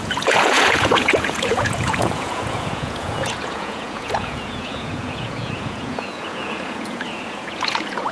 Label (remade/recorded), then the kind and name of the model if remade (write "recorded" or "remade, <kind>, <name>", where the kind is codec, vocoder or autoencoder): remade, vocoder, Vocos